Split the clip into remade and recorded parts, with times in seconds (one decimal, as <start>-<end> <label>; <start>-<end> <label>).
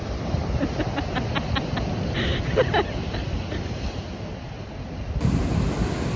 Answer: 0.0-6.2 recorded